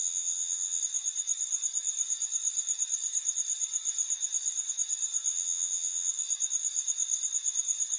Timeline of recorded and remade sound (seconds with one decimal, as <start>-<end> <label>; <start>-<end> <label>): 0.0-0.8 remade; 0.8-5.3 recorded; 5.3-6.1 remade; 6.1-8.0 recorded